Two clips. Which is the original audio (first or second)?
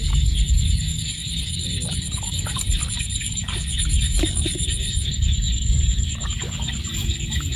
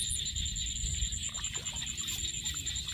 second